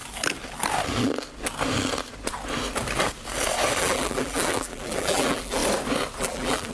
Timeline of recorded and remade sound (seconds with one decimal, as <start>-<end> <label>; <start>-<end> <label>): 0.0-3.8 recorded; 3.8-5.6 remade; 5.6-6.2 recorded; 6.2-6.7 remade